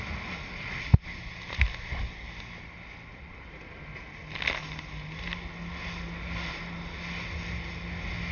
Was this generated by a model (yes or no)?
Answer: no